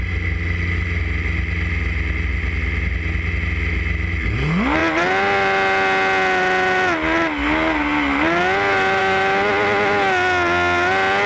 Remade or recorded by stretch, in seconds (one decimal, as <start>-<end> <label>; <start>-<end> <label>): 0.0-11.3 recorded